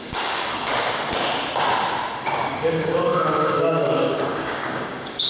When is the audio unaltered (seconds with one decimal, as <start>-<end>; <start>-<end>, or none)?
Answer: 0.7-2.2